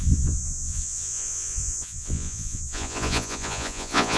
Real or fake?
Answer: fake